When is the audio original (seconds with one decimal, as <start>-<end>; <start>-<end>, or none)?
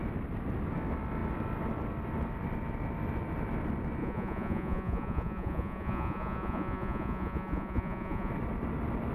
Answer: 0.0-4.0; 8.3-9.1